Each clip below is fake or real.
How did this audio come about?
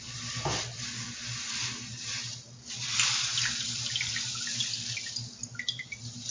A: real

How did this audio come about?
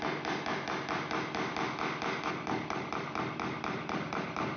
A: fake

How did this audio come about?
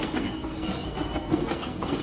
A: fake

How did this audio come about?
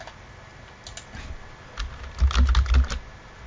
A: real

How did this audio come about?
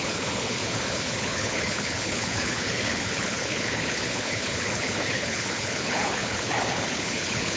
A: fake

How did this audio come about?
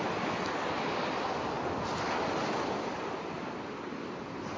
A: real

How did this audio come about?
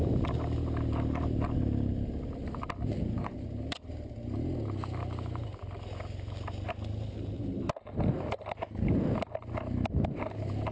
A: real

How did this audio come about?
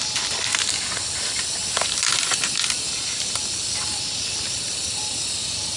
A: real